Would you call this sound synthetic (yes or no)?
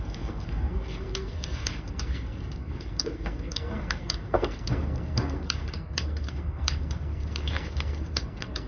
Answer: yes